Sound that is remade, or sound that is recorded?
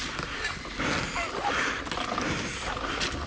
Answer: recorded